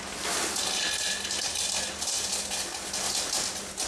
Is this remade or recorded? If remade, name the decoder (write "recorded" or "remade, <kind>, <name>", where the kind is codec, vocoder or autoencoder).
recorded